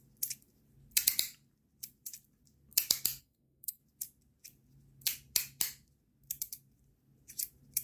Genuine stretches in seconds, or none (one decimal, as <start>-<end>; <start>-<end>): 0.0-3.2; 3.8-7.8